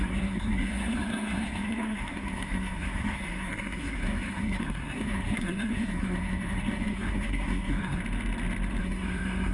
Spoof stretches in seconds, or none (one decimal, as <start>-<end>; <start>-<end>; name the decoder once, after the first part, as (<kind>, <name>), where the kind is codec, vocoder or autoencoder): 0.0-8.0 (codec, SNAC); 8.8-9.5